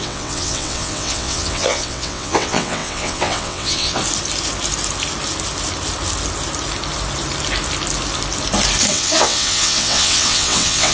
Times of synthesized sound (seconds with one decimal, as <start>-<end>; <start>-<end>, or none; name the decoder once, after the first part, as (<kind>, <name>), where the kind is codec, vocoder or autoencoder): 0.0-4.0 (vocoder, WaveNeXt); 8.9-10.9